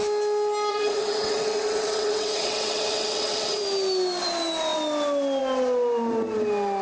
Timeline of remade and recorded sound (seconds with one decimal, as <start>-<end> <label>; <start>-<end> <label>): 0.0-0.7 recorded; 0.7-3.6 remade; 3.6-6.8 recorded